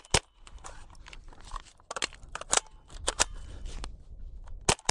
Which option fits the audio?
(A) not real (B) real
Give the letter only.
B